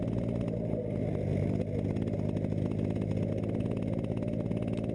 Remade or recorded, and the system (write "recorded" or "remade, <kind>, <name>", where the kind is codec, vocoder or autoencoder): recorded